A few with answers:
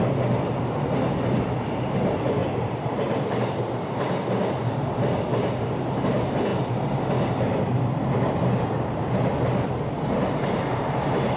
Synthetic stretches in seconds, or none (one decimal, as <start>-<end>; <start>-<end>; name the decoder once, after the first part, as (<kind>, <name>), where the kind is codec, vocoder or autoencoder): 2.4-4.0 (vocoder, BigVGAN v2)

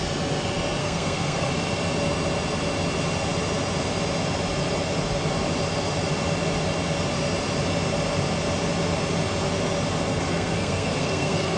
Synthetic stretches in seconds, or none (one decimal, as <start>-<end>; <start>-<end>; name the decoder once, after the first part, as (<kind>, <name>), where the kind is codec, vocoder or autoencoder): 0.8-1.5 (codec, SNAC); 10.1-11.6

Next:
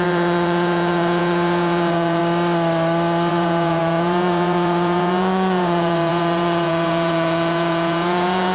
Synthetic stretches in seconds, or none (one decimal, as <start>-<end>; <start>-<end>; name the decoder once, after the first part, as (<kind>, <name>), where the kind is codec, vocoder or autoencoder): 0.0-2.2 (vocoder, Vocos); 3.3-8.5